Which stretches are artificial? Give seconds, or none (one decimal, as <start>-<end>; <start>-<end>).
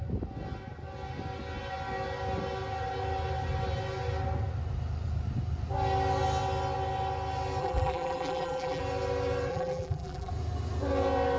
7.6-8.8; 9.5-10.3